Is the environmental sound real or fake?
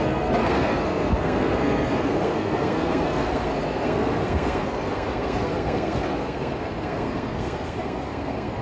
fake